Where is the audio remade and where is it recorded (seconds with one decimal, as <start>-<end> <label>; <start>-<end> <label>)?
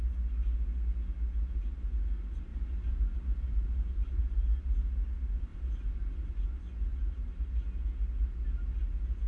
0.0-2.5 recorded; 2.5-4.2 remade; 4.2-5.5 recorded; 5.5-6.3 remade; 6.3-6.9 recorded; 6.9-7.5 remade; 7.5-9.3 recorded